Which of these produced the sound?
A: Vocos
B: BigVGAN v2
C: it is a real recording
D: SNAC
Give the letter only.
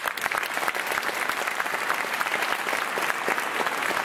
B